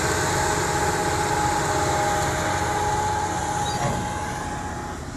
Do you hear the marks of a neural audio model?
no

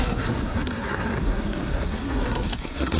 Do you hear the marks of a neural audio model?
yes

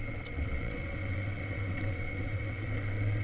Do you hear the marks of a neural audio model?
yes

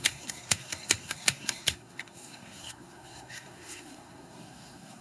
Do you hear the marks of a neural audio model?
yes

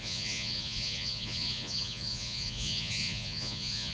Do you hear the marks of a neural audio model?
yes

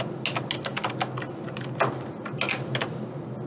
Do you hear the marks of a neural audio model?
no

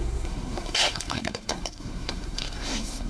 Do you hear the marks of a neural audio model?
yes